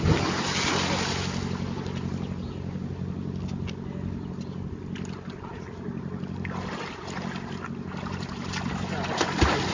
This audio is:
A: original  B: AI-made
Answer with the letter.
A